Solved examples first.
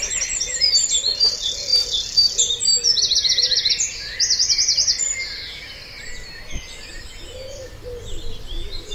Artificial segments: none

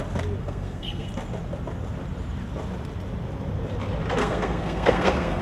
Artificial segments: 0.4-1.1 (codec, SNAC); 4.2-5.4

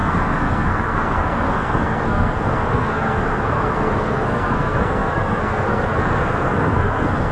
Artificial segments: 0.0-7.3 (codec, SNAC)

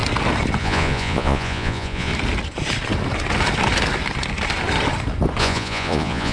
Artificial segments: 0.6-2.1 (vocoder, Vocos); 5.4-6.3

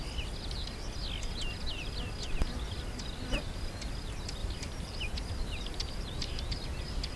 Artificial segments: 4.4-6.8 (vocoder, BigVGAN v2)